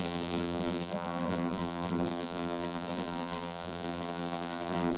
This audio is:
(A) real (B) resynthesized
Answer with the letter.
B